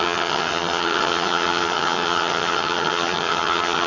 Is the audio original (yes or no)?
no